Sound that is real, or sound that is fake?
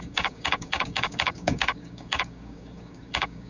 fake